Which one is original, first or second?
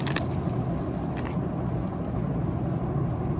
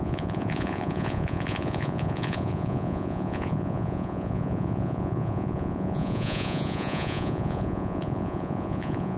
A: first